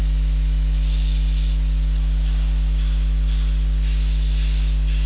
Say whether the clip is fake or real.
real